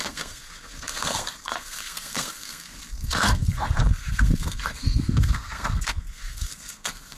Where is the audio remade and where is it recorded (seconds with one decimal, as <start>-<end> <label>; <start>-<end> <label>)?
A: 0.0-7.2 remade